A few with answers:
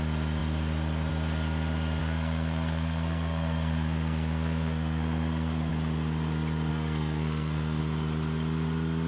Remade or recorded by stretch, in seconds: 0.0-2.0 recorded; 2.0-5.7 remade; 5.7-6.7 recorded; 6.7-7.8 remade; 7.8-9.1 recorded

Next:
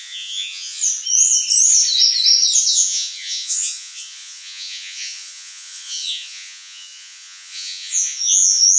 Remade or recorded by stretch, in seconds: 0.0-0.8 remade; 0.8-2.7 recorded; 2.7-8.8 remade